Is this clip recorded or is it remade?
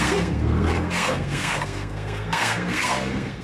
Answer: remade